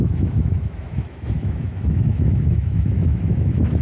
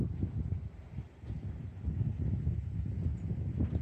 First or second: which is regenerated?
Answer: first